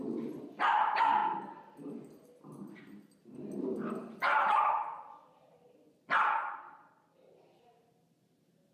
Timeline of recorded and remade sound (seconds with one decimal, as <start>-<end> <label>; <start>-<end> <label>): 0.0-8.7 recorded